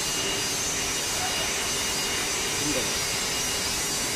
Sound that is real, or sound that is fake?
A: real